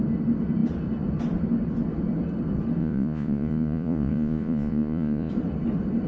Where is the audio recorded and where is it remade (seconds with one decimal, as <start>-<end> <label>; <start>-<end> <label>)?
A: 0.0-2.8 recorded; 2.8-5.3 remade; 5.3-6.1 recorded